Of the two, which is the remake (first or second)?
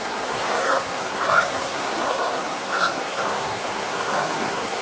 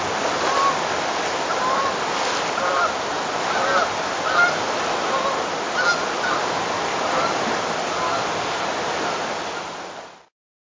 first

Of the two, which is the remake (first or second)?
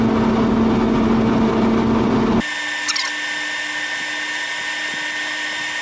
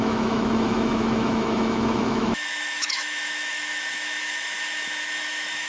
second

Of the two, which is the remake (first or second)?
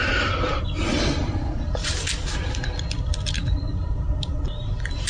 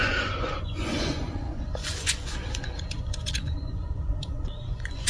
second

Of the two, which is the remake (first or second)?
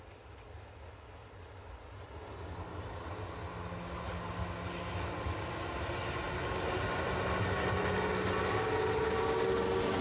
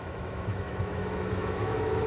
second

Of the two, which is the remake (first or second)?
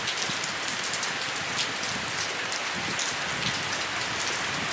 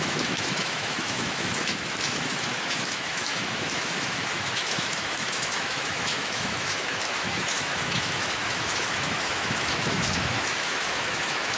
second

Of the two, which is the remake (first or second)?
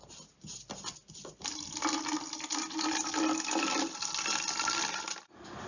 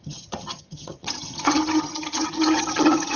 second